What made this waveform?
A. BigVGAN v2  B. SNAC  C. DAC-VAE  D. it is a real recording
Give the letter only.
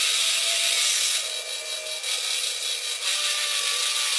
D